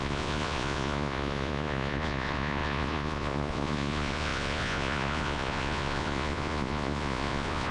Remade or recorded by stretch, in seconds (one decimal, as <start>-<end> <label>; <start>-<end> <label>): 0.0-7.7 remade